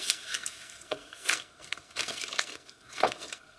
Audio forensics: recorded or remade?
remade